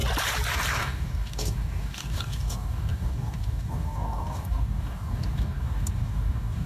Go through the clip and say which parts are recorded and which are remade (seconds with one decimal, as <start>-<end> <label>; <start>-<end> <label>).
0.0-0.7 recorded; 0.7-6.7 remade